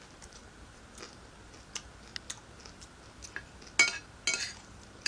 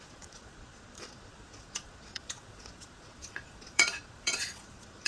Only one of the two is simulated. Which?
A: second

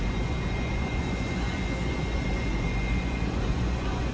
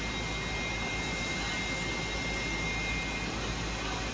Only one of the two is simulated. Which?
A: first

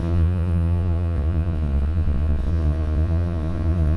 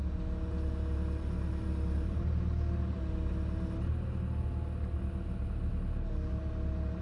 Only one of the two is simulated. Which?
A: first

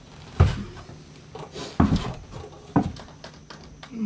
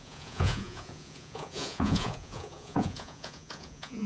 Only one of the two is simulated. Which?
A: second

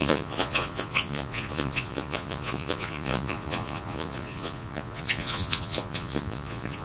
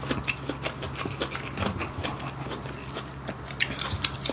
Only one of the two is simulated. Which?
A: first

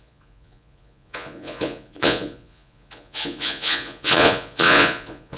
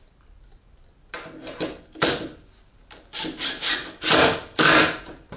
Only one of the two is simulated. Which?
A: first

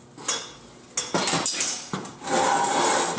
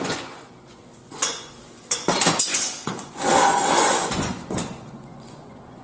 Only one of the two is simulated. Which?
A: second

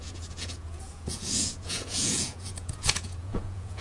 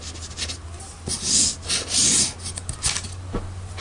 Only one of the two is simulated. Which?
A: first